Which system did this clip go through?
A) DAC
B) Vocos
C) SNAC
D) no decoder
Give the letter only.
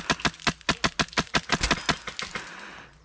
D